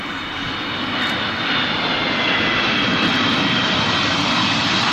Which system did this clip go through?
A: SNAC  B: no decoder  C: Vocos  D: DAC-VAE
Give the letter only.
B